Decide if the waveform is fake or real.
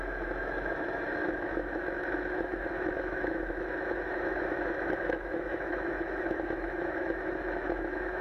fake